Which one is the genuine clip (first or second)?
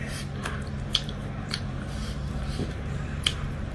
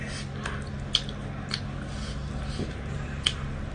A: second